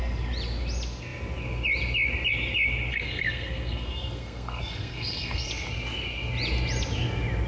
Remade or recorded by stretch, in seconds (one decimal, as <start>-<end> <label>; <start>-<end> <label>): 0.0-2.9 recorded; 2.9-5.5 remade; 5.5-7.5 recorded